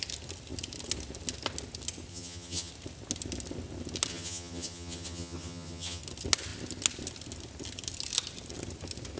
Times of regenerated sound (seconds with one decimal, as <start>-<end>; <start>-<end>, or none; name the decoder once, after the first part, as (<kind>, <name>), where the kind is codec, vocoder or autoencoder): 2.1-2.7 (vocoder, HiFi-GAN); 4.1-6.0